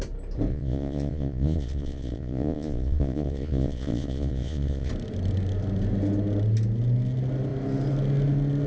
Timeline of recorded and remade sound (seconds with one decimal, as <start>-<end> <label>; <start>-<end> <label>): 0.0-0.5 recorded; 0.5-4.9 remade; 4.9-8.7 recorded